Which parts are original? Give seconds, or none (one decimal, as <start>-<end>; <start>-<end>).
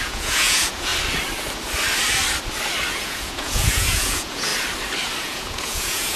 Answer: 0.9-2.9; 4.5-5.2